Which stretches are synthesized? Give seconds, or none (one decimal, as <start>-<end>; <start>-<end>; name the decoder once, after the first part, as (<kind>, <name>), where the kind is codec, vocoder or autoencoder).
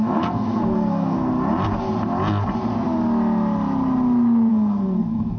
0.0-1.3 (codec, SNAC); 4.5-5.4